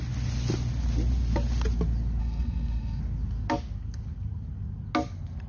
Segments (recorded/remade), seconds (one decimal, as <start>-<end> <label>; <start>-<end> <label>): 0.0-2.2 recorded; 2.2-3.0 remade; 3.0-5.5 recorded